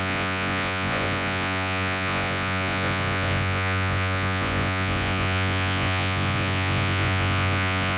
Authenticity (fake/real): fake